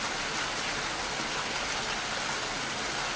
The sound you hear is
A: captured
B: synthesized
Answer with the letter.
A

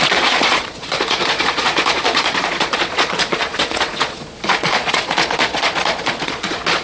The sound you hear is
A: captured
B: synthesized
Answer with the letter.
B